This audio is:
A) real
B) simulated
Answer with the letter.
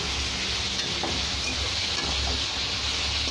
A